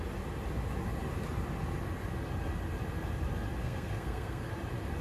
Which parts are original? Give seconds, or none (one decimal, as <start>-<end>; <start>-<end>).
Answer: 0.0-3.6; 4.5-5.0